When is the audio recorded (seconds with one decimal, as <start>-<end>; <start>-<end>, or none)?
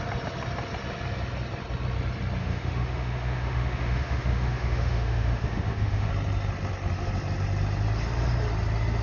0.0-2.4; 6.1-9.0